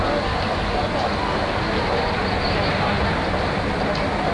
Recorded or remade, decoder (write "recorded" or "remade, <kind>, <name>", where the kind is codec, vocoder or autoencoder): recorded